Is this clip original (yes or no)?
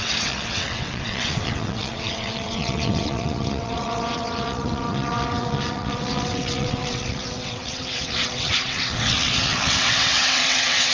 no